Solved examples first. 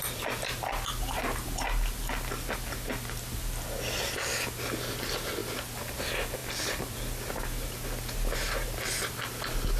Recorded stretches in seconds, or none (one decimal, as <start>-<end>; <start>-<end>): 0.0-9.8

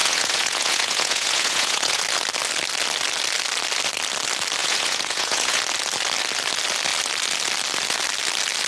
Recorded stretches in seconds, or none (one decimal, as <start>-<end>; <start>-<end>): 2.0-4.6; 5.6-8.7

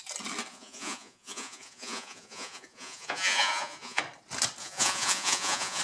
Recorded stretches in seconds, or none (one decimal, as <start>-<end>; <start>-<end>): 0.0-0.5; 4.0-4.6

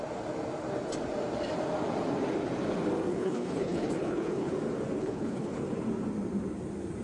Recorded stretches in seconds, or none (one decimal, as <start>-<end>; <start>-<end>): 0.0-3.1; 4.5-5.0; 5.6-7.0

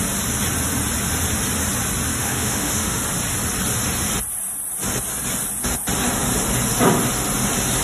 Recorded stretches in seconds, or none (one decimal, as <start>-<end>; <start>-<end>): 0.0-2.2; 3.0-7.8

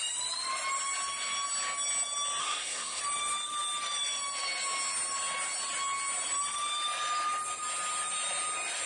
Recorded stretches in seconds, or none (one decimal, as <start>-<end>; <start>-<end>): 0.0-2.4; 3.0-8.9

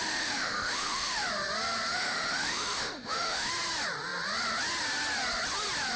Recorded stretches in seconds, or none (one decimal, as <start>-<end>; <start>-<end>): 1.3-1.9; 3.5-6.0

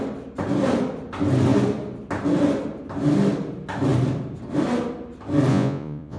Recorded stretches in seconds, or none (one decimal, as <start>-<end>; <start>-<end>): 0.0-5.5